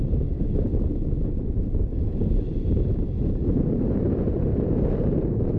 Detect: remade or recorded remade